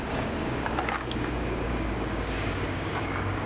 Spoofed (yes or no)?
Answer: yes